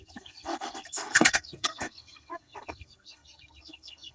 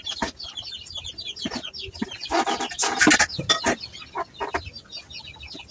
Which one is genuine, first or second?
second